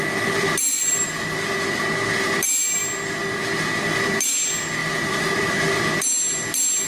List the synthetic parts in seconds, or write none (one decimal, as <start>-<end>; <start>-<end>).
0.7-1.2; 4.8-5.8